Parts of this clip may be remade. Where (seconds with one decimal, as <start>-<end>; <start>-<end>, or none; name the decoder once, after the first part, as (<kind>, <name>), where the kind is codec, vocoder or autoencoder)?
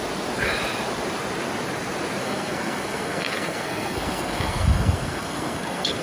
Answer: 2.2-6.0 (codec, SNAC)